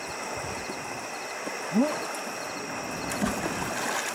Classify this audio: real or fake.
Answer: real